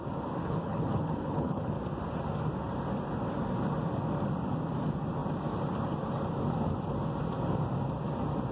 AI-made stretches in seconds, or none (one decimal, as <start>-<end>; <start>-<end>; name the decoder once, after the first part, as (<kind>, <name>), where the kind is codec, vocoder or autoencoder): 0.4-1.7 (codec, HILCodec)